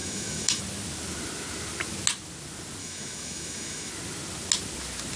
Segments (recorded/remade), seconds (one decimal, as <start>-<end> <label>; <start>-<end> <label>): 0.0-0.6 remade; 0.6-2.8 recorded; 2.8-3.9 remade; 3.9-5.2 recorded